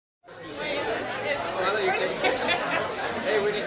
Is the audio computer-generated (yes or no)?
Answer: no